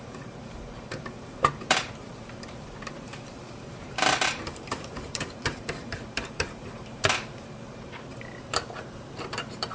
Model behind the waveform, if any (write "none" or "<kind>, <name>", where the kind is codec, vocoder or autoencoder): vocoder, BigVGAN v2